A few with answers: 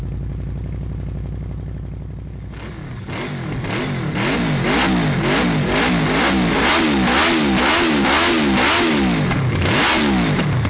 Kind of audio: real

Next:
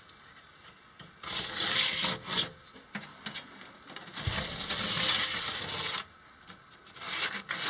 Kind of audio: real